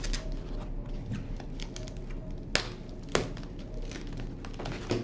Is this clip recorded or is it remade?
recorded